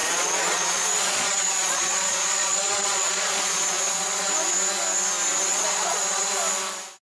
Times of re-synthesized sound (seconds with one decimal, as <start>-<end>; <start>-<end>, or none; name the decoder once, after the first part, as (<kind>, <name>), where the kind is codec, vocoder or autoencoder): 0.0-4.3 (vocoder, Vocos); 5.5-6.3